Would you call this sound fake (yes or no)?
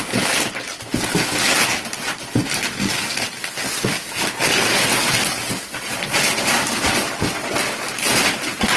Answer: no